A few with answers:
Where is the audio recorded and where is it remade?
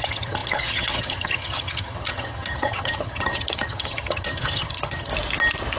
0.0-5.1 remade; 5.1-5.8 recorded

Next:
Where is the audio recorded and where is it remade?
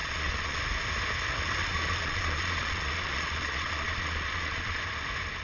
0.0-0.6 remade; 0.6-1.6 recorded; 1.6-4.8 remade; 4.8-5.4 recorded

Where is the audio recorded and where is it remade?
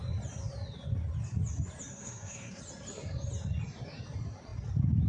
0.0-1.9 recorded; 1.9-2.6 remade; 2.6-5.1 recorded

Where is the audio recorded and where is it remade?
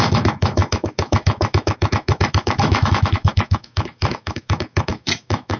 0.0-5.6 remade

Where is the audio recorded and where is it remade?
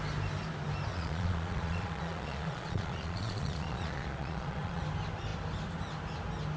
0.0-0.9 recorded; 0.9-4.8 remade; 4.8-6.6 recorded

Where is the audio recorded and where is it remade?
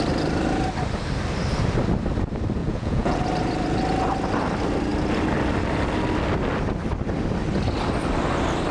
0.0-2.6 recorded; 2.6-3.2 remade; 3.2-8.7 recorded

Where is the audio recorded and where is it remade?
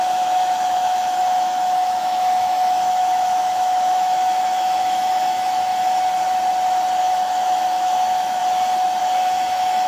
0.0-5.7 remade; 5.7-7.0 recorded; 7.0-8.4 remade; 8.4-9.0 recorded; 9.0-9.9 remade